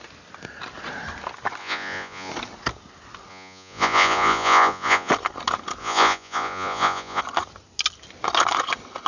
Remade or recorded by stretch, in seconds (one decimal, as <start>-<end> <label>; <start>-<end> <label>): 0.0-1.6 recorded; 1.6-2.3 remade; 2.3-3.3 recorded; 3.3-5.1 remade; 5.1-5.8 recorded; 5.8-7.2 remade; 7.2-9.1 recorded